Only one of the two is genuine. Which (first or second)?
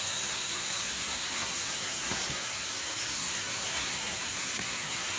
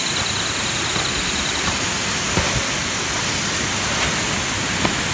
second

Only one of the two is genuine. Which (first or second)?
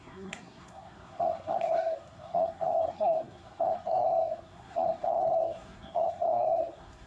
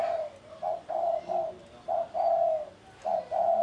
second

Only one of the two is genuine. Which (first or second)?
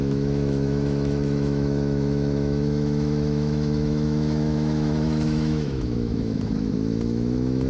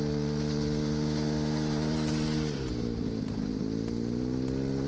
second